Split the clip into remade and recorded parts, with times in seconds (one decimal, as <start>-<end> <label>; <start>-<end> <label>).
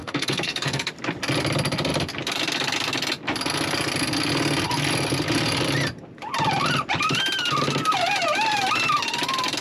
0.0-0.9 remade; 0.9-9.6 recorded